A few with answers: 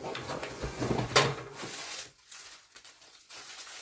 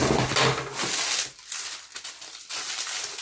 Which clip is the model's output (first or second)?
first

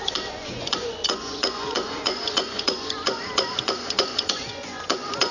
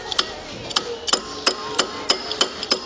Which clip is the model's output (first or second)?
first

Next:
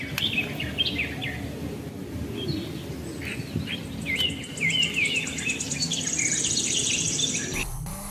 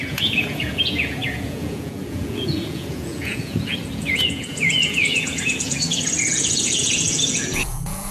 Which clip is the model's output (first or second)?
second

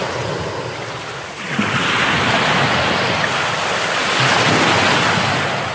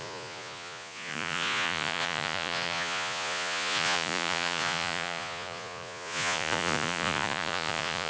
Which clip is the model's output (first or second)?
second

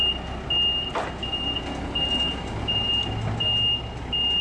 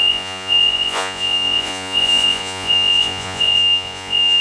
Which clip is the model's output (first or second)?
second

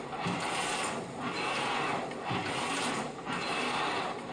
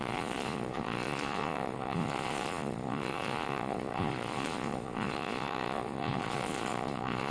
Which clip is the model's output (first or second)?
second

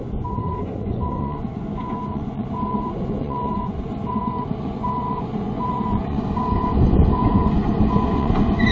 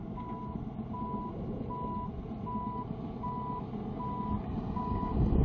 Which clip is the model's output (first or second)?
first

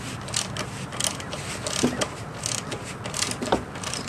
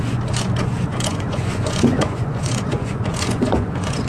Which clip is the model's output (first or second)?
second